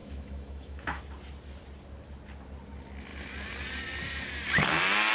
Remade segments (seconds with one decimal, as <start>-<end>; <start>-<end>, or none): 0.0-1.0